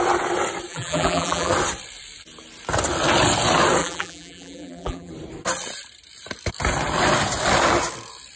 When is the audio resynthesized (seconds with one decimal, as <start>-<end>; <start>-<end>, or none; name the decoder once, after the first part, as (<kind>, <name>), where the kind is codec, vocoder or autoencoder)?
0.7-1.5 (vocoder, BigVGAN v2); 3.8-5.1